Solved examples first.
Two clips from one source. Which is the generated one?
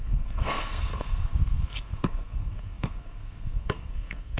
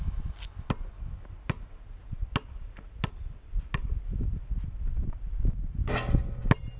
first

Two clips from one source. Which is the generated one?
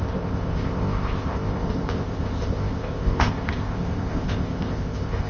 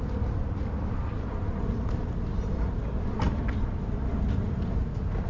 first